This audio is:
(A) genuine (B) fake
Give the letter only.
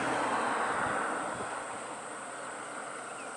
A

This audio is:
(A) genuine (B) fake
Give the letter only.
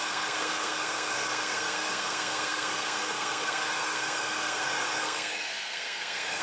B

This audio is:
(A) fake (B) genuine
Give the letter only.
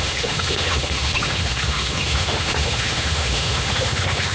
A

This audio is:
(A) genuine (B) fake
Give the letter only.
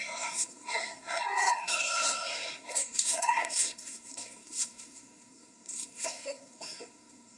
B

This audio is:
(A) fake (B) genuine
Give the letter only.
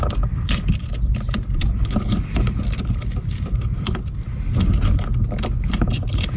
B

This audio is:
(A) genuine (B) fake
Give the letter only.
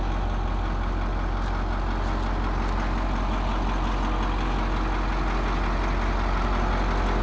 A